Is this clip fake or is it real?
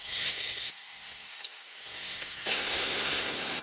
fake